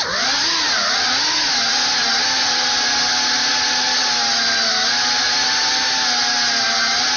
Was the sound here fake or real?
real